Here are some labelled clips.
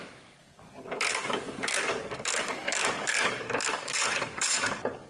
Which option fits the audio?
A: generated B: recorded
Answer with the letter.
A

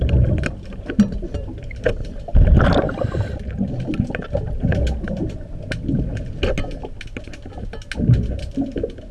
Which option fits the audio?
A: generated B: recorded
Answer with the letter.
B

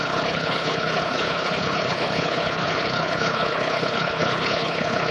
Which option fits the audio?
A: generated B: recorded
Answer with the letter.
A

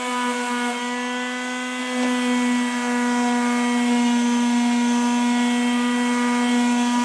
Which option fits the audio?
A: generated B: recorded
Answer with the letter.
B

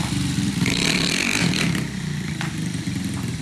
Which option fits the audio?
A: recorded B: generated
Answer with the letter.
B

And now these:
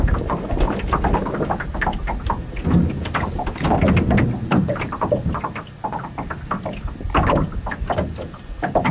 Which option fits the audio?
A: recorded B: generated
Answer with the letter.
A